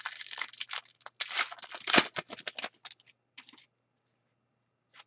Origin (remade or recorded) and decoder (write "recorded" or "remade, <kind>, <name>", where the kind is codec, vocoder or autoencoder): recorded